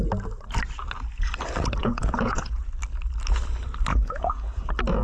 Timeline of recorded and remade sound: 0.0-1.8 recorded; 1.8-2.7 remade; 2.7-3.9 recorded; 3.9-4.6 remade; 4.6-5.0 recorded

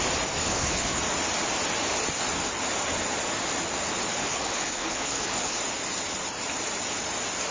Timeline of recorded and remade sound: 0.0-0.4 recorded; 0.4-1.0 remade; 1.0-4.1 recorded; 4.1-5.6 remade; 5.6-7.5 recorded

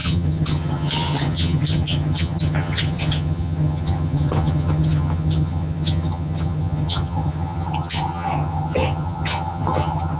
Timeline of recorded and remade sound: 0.0-10.2 remade

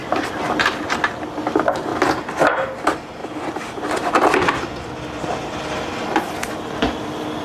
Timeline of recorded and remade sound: 0.0-1.1 remade; 1.1-3.2 recorded; 3.2-4.1 remade; 4.1-7.4 recorded

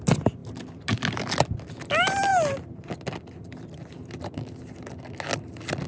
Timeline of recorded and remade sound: 0.0-5.9 recorded

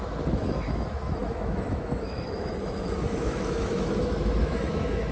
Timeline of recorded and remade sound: 0.0-5.1 remade

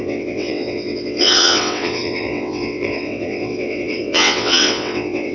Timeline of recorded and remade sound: 0.0-5.3 remade

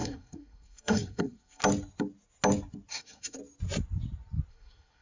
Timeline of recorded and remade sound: 0.0-1.6 remade; 1.6-2.9 recorded; 2.9-3.4 remade; 3.4-4.5 recorded; 4.5-5.0 remade